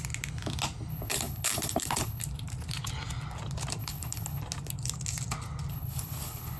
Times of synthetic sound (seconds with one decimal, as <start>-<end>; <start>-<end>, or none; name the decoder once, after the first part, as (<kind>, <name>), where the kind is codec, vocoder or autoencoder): 0.9-2.2 (codec, HILCodec); 3.8-4.4; 5.7-6.6